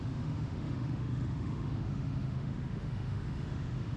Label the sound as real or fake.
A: fake